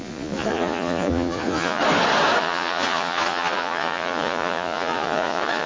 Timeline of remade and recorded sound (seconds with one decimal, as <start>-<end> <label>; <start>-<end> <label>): 0.0-1.8 remade; 1.8-2.4 recorded; 2.4-5.7 remade